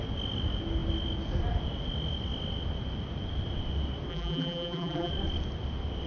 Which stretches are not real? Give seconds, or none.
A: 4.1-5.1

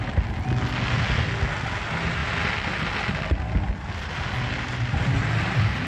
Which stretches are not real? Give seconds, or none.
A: none

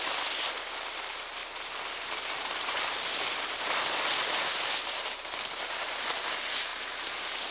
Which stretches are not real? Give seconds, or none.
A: none